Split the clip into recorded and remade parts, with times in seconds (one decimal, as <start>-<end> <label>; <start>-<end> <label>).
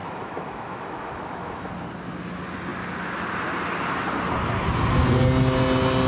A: 0.0-1.7 remade; 1.7-6.1 recorded